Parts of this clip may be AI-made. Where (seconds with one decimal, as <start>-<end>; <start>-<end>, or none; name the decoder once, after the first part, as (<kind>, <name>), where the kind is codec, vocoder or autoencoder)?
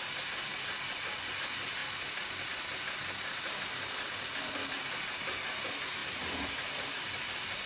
none